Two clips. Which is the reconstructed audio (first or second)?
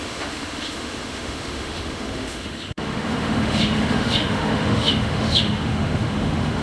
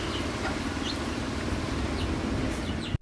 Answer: first